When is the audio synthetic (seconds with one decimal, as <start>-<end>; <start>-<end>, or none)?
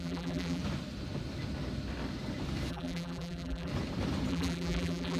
0.0-0.6; 2.7-3.7; 4.3-5.2